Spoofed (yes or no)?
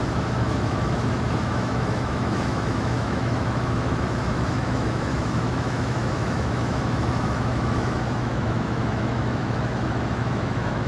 yes